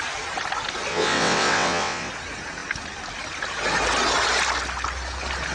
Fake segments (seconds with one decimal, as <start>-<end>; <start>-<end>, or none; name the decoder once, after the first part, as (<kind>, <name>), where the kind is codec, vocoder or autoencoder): 0.9-2.1 (vocoder, WaveNeXt)